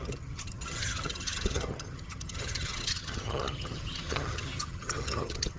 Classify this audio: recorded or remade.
remade